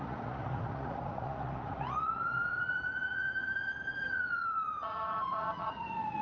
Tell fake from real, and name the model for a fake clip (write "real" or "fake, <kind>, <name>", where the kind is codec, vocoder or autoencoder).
fake, vocoder, Vocos